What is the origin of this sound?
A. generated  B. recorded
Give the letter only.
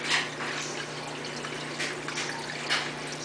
B